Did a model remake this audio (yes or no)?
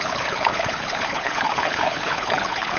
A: yes